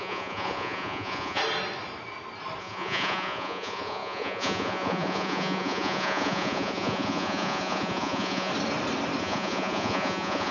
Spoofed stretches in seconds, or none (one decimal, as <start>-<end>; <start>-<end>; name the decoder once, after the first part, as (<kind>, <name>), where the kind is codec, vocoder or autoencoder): 0.0-1.4 (vocoder, Vocos); 2.6-8.5; 9.2-10.5